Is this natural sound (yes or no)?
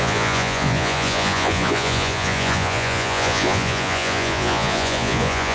no